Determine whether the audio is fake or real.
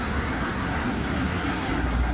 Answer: fake